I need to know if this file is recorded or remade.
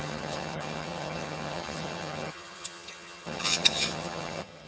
remade